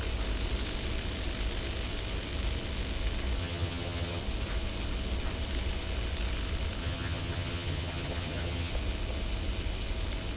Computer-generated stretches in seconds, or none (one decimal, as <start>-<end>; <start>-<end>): 3.4-4.2; 6.8-8.7